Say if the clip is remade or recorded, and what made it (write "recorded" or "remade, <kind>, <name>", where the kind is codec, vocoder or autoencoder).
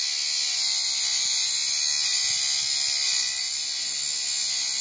recorded